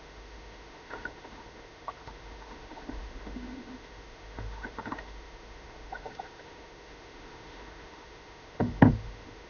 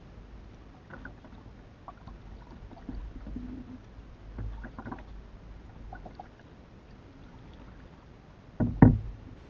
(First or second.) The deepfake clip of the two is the first